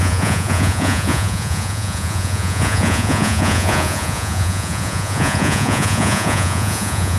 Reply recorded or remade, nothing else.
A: remade